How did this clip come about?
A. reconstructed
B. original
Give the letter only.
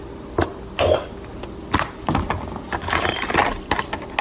B